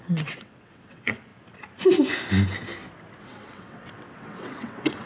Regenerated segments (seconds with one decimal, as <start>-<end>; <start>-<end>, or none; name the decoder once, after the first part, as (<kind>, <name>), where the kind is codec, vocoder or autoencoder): 0.0-1.3 (vocoder, WaveNeXt); 3.2-5.1